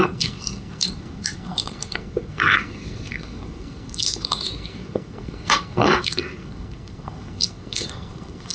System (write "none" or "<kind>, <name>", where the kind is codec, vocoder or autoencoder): codec, SNAC